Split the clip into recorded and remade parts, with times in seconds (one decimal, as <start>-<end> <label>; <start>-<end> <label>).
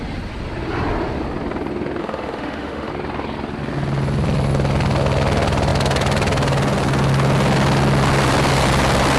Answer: 0.0-2.0 recorded; 2.0-2.9 remade; 2.9-9.2 recorded